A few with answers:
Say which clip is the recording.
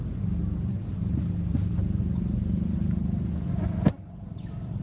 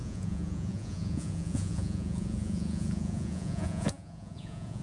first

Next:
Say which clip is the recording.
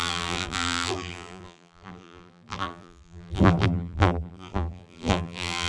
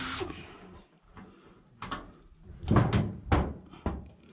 second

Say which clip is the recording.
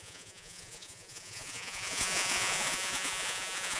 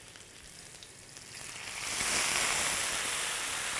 second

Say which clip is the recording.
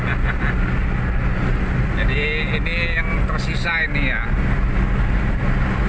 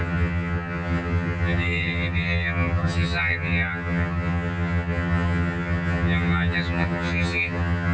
first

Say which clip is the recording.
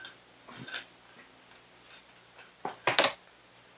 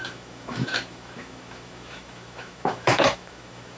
first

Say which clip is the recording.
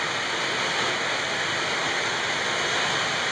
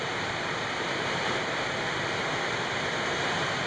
first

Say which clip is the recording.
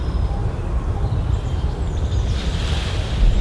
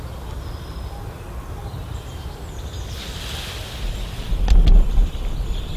second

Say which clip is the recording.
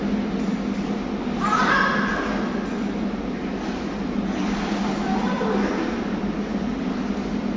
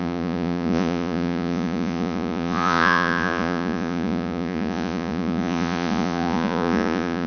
first